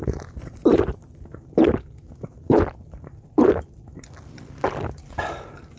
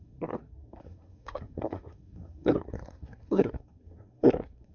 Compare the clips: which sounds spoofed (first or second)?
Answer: second